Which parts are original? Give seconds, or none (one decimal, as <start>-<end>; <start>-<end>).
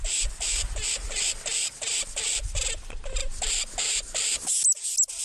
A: 0.0-5.2